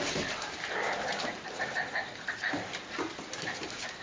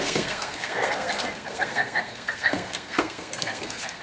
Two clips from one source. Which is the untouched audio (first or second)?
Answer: first